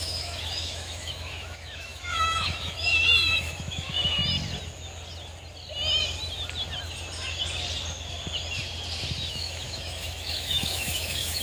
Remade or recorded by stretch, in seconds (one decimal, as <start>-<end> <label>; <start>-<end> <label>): 0.0-4.2 remade; 4.2-9.3 recorded; 9.3-11.4 remade